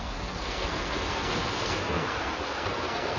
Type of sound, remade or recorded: remade